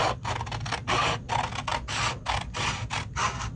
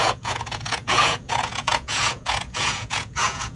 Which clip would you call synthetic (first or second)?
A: second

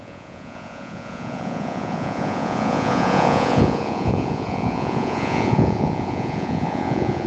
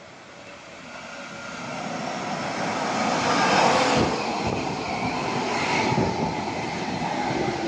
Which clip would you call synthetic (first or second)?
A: first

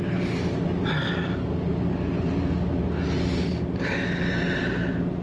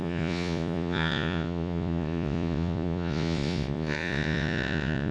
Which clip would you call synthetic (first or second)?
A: second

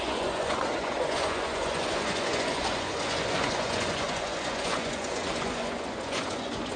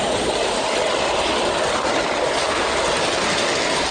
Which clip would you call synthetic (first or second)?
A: first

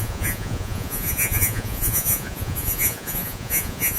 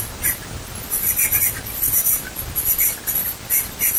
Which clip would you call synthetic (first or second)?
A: first